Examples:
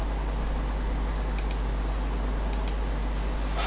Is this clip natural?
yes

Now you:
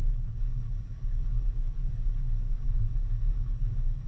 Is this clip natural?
no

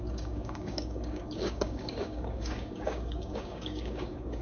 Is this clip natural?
no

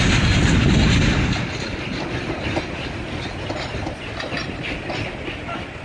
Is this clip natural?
yes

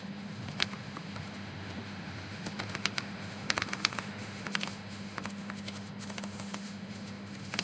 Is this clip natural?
no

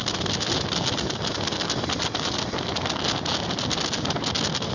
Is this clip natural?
yes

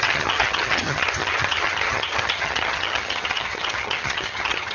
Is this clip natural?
no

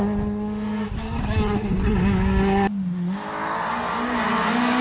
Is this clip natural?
yes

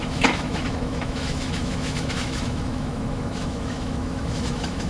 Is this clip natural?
no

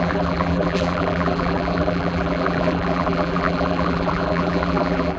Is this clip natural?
no